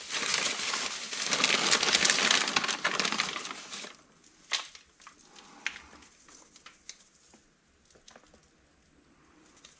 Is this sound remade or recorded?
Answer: recorded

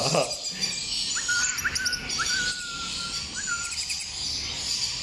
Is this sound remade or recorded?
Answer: remade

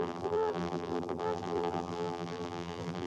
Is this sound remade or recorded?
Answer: remade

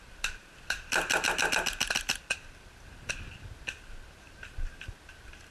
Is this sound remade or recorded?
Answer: recorded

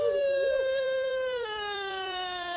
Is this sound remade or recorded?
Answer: remade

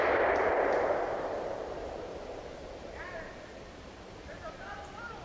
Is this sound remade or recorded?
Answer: remade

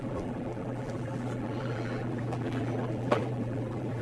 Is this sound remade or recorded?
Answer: remade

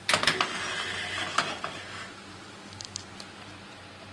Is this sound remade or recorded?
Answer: recorded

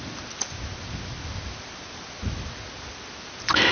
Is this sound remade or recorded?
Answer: recorded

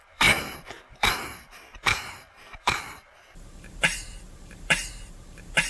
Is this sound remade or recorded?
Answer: remade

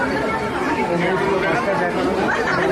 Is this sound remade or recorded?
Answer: remade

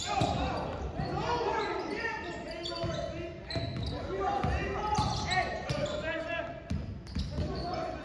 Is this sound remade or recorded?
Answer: recorded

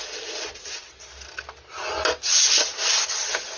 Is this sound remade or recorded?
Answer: recorded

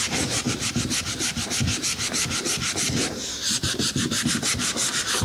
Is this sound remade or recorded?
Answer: remade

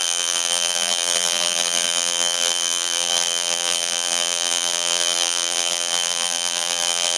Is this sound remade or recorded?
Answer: remade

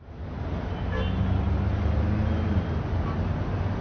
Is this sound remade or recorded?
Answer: recorded